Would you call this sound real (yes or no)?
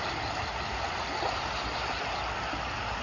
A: yes